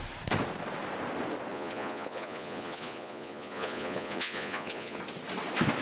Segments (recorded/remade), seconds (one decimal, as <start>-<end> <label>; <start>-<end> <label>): 0.0-1.5 recorded; 1.5-5.0 remade; 5.0-5.8 recorded